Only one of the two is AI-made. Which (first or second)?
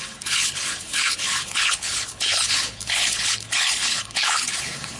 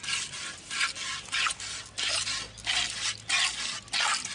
first